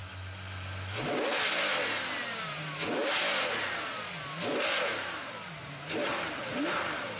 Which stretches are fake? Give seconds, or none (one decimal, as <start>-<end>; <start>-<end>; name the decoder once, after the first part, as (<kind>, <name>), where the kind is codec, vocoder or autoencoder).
none